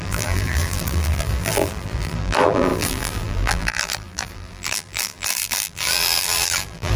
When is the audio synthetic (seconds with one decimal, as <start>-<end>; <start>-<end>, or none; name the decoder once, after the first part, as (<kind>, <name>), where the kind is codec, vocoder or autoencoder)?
0.0-7.0 (vocoder, BigVGAN v2)